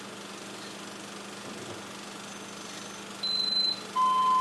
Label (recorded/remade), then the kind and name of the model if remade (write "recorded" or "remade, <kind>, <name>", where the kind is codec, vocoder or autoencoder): recorded